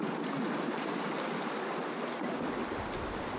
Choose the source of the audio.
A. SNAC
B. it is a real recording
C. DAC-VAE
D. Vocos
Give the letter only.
B